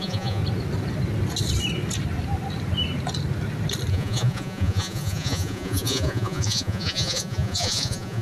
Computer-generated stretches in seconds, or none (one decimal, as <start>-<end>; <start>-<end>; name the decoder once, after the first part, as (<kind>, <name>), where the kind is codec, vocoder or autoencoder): 0.0-0.4 (vocoder, Vocos); 3.9-8.2